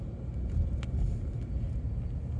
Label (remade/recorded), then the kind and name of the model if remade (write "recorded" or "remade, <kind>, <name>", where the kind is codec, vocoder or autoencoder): recorded